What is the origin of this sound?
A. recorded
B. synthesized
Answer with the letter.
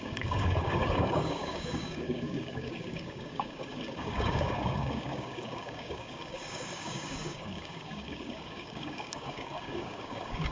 B